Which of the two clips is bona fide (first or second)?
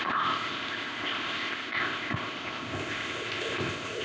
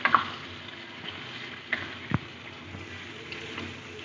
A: second